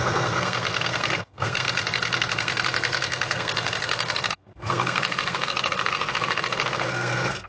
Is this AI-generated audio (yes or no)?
yes